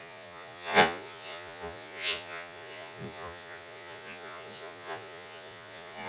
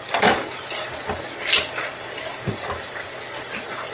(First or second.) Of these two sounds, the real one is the second